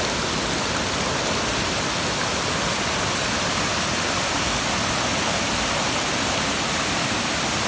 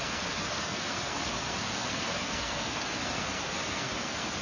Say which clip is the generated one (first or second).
second